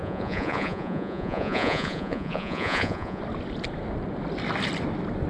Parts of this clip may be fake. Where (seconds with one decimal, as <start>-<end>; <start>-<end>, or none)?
0.0-3.2